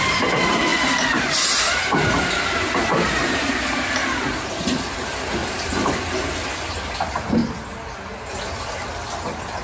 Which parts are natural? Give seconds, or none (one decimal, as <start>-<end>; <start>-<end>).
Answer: 0.0-2.9; 3.5-5.4; 6.0-9.6